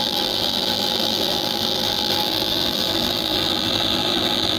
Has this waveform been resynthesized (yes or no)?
yes